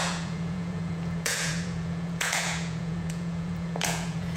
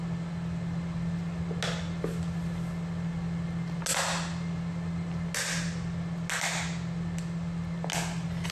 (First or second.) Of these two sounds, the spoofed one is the first